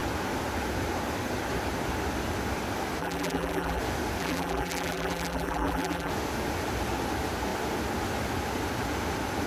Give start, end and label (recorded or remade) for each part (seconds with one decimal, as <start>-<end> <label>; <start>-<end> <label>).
0.0-3.0 recorded; 3.0-3.8 remade; 3.8-4.2 recorded; 4.2-6.1 remade; 6.1-9.5 recorded